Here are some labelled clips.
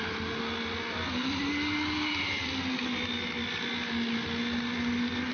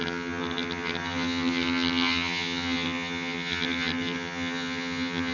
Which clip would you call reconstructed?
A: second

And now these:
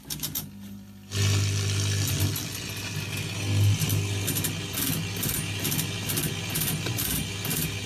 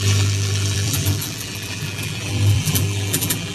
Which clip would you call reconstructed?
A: second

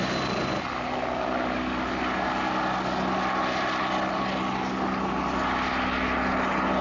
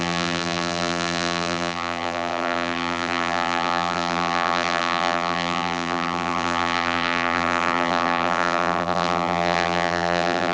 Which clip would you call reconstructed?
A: second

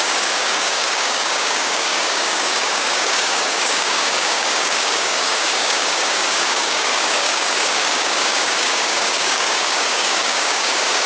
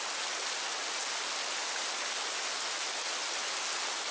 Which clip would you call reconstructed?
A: first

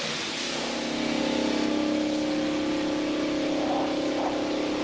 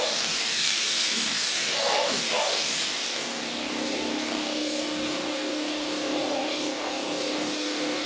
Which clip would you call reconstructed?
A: second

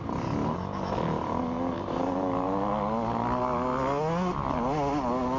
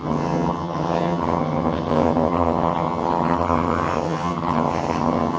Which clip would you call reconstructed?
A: second